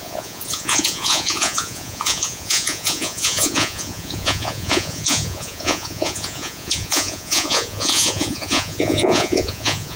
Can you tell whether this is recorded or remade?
remade